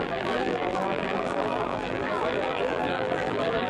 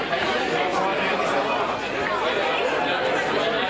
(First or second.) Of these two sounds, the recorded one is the second